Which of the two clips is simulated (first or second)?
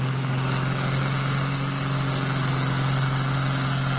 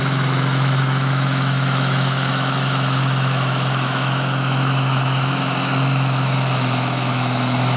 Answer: second